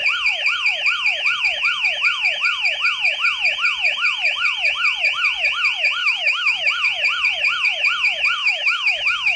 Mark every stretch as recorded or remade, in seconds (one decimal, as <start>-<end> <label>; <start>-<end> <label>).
0.0-6.0 recorded; 6.0-6.7 remade; 6.7-8.4 recorded; 8.4-9.4 remade